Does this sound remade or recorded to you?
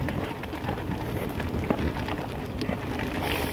recorded